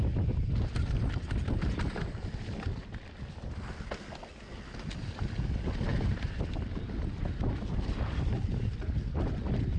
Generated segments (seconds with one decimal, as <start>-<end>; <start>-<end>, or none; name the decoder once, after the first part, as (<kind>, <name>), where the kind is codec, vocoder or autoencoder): none